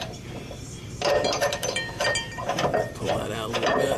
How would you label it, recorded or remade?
remade